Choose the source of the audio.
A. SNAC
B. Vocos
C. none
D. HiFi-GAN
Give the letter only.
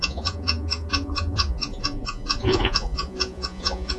B